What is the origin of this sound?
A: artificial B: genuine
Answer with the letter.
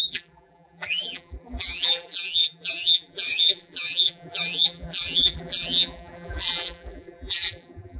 A